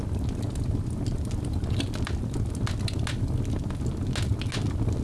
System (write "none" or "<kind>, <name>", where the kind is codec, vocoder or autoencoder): none